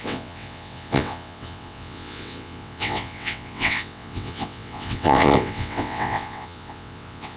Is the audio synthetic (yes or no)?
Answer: yes